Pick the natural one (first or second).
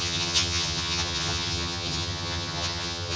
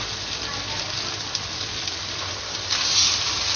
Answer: second